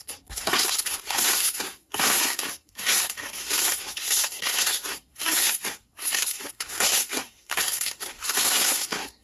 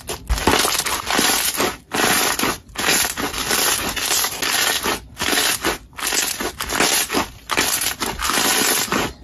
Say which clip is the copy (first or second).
first